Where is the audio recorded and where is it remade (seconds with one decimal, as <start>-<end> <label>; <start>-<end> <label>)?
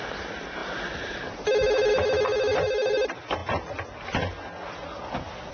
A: 0.0-5.5 recorded